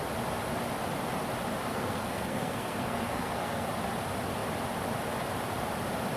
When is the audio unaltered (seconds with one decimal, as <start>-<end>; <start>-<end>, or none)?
0.0-1.7; 3.7-6.2